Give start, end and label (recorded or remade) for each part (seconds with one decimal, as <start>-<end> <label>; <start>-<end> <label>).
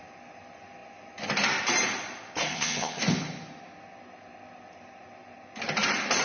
0.0-2.5 recorded; 2.5-3.0 remade; 3.0-6.2 recorded